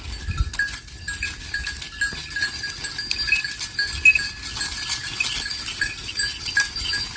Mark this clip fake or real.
real